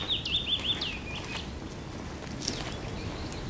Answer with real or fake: real